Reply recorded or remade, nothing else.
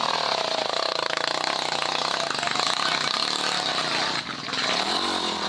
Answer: recorded